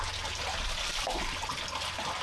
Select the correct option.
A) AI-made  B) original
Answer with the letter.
B